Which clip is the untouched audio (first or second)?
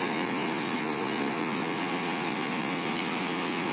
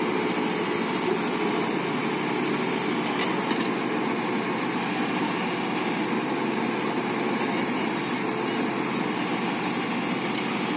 second